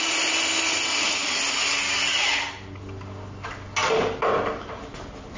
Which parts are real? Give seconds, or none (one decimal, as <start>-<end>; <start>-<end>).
0.0-5.4